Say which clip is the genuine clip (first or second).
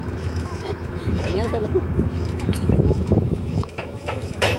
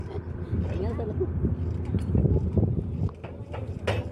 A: second